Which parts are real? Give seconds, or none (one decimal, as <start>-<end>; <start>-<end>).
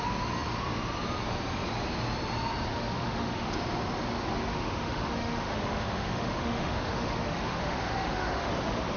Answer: 0.0-2.7; 3.5-4.5; 8.5-9.0